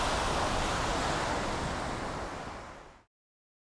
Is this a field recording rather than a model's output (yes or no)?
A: yes